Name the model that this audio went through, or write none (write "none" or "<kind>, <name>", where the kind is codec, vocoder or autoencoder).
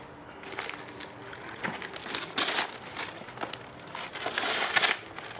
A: none